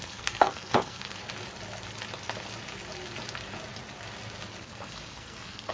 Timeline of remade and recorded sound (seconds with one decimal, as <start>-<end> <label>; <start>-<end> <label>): 0.0-1.2 remade; 1.2-4.6 recorded; 4.6-5.7 remade